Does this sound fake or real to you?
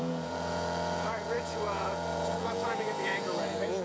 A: fake